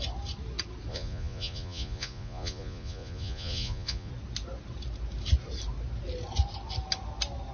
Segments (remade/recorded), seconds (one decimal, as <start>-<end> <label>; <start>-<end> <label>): 0.0-0.9 recorded; 0.9-4.1 remade; 4.1-7.5 recorded